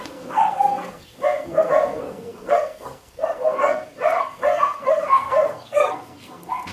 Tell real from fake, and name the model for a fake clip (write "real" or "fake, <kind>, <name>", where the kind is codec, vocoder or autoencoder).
fake, codec, SNAC